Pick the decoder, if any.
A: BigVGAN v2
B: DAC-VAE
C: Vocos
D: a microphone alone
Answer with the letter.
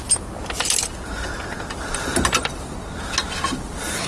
D